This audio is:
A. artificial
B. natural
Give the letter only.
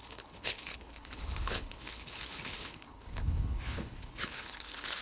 A